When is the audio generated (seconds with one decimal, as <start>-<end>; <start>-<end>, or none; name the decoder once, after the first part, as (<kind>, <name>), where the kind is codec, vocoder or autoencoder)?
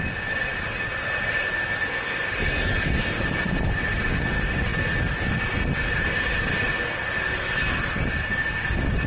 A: none